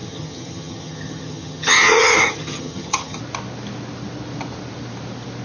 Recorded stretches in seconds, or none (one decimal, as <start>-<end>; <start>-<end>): 3.2-5.4